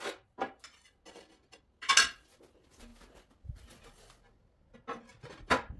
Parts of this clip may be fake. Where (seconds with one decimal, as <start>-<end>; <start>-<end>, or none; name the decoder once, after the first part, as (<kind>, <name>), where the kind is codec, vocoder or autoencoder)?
none